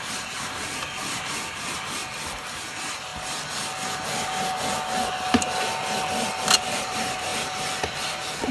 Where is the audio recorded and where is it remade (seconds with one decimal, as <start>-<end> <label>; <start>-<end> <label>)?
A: 0.0-3.1 remade; 3.1-6.6 recorded; 6.6-7.3 remade; 7.3-8.1 recorded; 8.1-8.5 remade